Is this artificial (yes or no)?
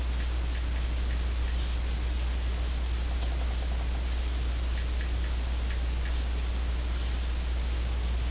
no